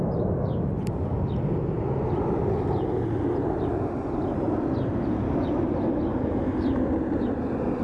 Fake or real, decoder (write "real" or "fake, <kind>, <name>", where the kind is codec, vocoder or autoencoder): real